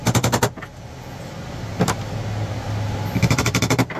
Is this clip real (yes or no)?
yes